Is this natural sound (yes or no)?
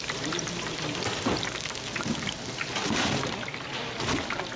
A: yes